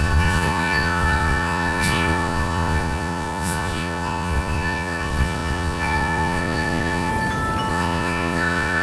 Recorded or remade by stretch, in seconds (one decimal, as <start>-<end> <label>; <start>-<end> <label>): 0.0-7.1 remade; 7.1-7.7 recorded; 7.7-8.8 remade